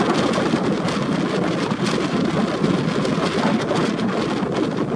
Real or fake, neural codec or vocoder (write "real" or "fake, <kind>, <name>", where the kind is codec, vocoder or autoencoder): real